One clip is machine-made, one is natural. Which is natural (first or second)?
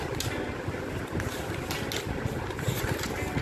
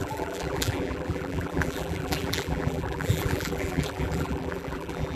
first